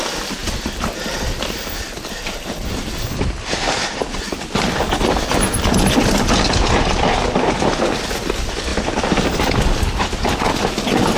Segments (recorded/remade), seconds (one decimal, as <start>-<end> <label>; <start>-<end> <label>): 0.0-0.4 recorded; 0.4-5.1 remade; 5.1-8.7 recorded; 8.7-9.5 remade; 9.5-11.2 recorded